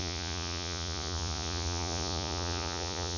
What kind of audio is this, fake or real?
fake